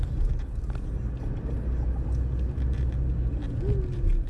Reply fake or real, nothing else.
real